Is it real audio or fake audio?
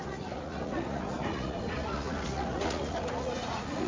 fake